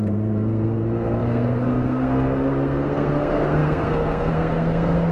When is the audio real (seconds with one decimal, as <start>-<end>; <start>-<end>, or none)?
none